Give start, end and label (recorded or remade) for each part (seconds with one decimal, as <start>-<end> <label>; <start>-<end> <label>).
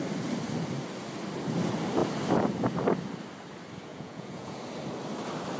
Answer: 0.0-3.9 recorded; 3.9-4.6 remade; 4.6-5.6 recorded